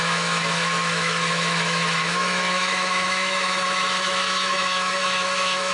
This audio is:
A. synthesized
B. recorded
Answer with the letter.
A